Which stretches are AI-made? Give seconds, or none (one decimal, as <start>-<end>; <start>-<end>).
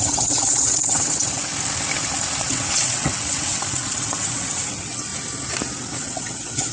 0.0-1.5; 2.4-5.1; 5.9-6.7